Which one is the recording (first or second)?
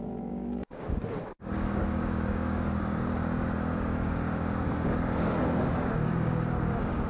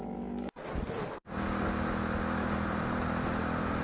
second